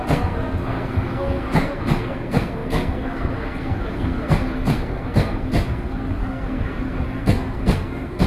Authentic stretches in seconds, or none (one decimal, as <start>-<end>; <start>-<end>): none